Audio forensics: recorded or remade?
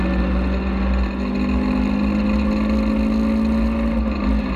recorded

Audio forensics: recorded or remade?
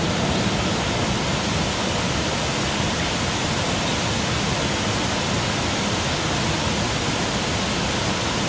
recorded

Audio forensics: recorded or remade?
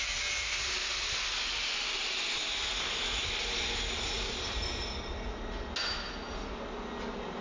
recorded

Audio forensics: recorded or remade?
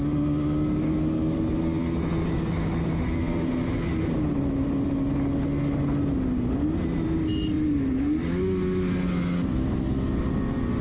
recorded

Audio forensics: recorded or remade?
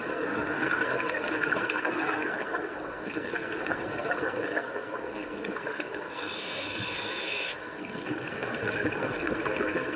remade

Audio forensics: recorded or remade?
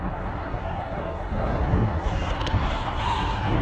remade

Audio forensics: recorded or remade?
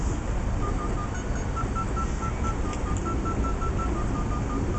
recorded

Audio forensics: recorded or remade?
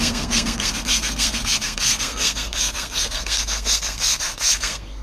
remade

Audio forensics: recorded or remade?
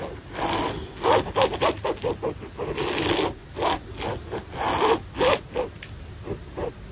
recorded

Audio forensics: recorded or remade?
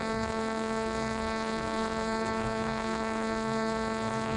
remade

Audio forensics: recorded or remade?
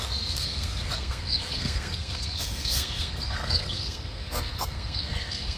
remade